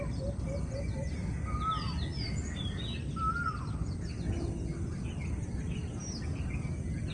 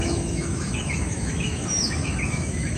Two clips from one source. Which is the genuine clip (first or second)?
first